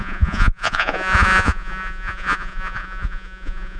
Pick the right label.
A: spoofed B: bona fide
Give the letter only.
A